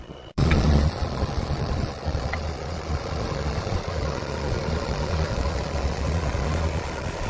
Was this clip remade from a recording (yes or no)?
yes